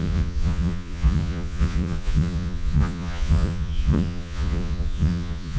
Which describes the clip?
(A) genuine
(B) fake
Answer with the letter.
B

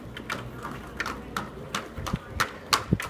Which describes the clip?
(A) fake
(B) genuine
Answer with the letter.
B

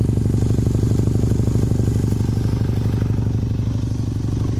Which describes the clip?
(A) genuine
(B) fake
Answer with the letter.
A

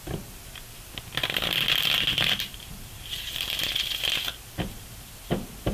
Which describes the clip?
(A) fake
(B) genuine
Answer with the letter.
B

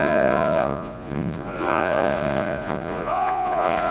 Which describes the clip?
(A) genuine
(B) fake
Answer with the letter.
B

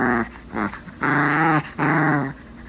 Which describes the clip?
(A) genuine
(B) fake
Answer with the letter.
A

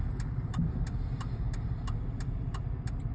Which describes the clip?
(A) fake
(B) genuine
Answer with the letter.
B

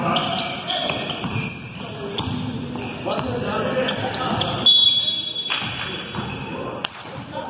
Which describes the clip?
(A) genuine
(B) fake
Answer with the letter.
A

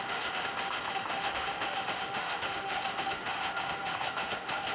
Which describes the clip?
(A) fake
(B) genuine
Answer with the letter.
A